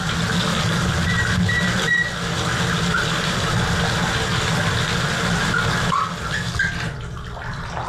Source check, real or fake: real